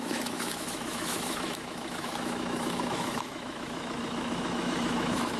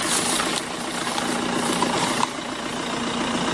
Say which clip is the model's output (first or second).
first